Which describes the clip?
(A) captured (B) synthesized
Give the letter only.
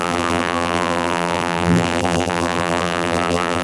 B